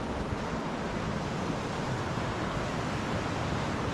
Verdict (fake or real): real